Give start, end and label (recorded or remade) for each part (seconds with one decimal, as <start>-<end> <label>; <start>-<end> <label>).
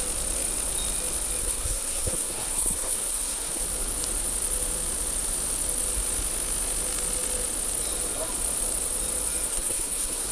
0.0-1.4 recorded; 1.4-3.6 remade; 3.6-9.5 recorded; 9.5-10.3 remade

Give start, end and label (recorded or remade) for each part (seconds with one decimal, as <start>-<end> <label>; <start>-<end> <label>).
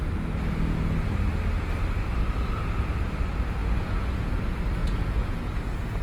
0.0-3.6 recorded; 3.6-4.3 remade; 4.3-4.8 recorded; 4.8-6.0 remade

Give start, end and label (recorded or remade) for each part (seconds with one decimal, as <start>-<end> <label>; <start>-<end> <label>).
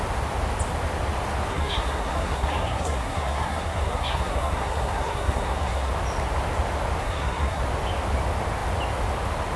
0.0-1.5 recorded; 1.5-5.9 remade; 5.9-7.0 recorded; 7.0-7.6 remade; 7.6-9.6 recorded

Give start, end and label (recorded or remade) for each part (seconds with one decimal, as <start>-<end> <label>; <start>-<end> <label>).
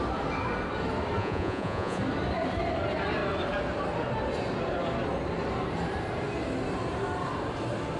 0.0-1.2 recorded; 1.2-2.0 remade; 2.0-8.0 recorded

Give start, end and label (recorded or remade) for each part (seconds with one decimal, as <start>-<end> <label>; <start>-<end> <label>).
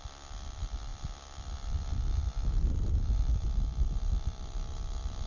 0.0-5.3 recorded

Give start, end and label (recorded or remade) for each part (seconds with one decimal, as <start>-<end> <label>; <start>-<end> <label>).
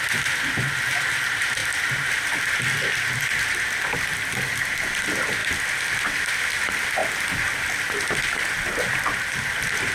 0.0-9.9 recorded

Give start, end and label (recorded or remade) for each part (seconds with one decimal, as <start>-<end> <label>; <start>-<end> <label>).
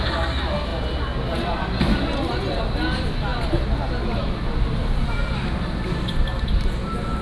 0.0-7.2 recorded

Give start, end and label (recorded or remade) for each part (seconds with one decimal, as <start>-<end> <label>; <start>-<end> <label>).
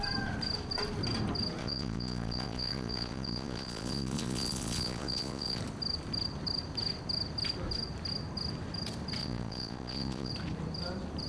0.0-1.6 recorded; 1.6-5.6 remade; 5.6-9.2 recorded; 9.2-10.3 remade; 10.3-11.3 recorded